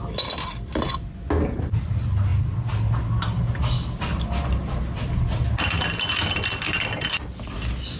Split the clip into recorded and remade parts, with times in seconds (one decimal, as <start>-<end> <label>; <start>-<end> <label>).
0.0-8.0 recorded